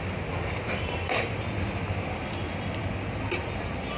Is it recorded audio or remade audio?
recorded